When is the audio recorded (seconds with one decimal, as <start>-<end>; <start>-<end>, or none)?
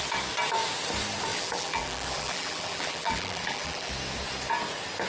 0.0-1.3; 3.9-5.1